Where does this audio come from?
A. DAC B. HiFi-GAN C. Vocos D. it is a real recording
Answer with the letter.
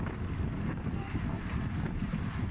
D